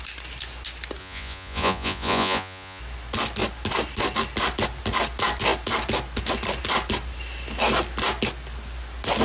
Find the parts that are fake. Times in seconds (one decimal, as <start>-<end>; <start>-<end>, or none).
1.0-2.8